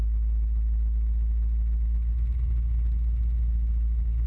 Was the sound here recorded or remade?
recorded